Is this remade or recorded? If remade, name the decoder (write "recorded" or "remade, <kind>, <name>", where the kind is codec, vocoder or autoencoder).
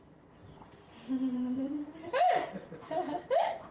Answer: remade, vocoder, BigVGAN v2